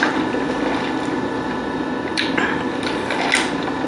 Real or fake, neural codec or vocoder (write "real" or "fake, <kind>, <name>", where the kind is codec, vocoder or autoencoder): real